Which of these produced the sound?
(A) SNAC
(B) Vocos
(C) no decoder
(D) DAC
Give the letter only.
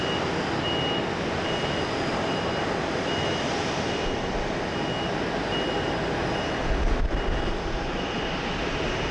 C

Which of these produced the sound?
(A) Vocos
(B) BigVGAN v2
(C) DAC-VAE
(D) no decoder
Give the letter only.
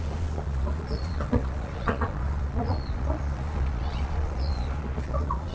A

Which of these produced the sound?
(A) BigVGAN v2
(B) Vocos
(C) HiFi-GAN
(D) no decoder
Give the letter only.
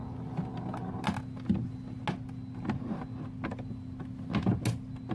D